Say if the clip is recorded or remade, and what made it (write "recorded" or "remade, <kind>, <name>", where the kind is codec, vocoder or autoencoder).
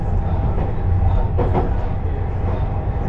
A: recorded